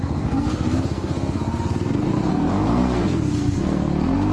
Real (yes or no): no